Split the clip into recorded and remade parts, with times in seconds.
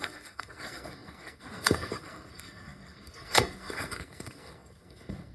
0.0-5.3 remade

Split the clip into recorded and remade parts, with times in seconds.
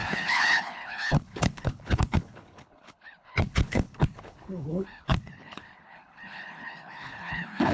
0.0-7.7 remade